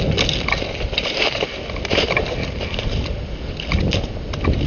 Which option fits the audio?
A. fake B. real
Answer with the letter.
B